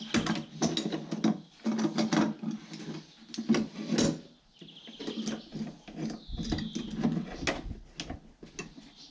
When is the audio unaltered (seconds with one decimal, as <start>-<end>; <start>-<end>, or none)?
0.0-9.1